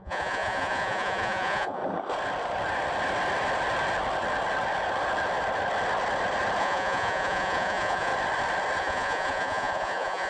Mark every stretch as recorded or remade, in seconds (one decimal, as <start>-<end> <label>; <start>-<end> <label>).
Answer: 0.0-1.8 remade; 1.8-6.6 recorded; 6.6-8.1 remade; 8.1-8.8 recorded; 8.8-10.3 remade